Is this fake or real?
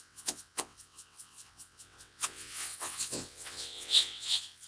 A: fake